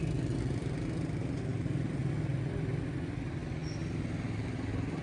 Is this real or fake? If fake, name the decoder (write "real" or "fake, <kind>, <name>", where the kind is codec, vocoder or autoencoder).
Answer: real